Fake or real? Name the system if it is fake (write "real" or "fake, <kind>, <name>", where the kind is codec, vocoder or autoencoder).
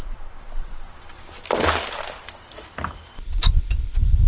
real